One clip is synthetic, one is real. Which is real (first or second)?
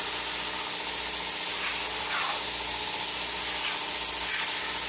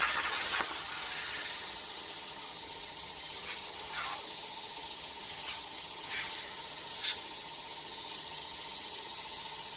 first